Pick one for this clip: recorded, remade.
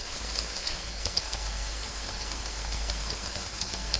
remade